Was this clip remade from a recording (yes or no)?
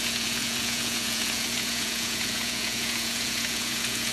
yes